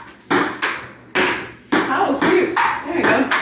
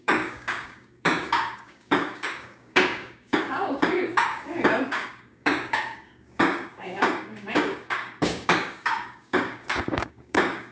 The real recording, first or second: first